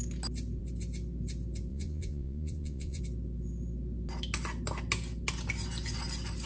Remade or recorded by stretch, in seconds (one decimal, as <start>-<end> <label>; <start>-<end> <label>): 0.0-1.7 recorded; 1.7-3.0 remade; 3.0-6.5 recorded